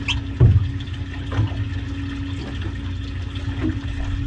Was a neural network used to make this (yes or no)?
no